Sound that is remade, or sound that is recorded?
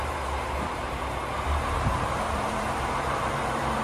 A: remade